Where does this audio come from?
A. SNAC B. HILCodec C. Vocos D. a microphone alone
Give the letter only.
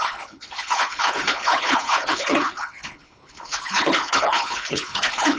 B